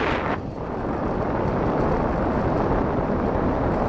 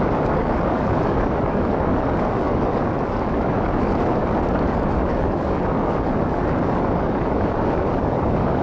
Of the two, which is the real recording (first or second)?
first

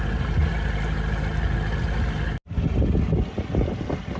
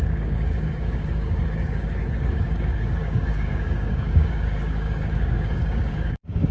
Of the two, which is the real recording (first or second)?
first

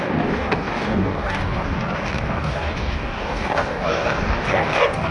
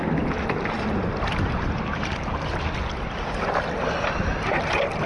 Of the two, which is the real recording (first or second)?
second